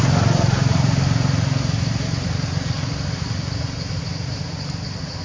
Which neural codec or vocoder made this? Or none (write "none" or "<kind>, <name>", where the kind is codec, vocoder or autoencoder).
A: none